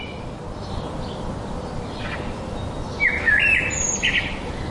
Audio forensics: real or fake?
real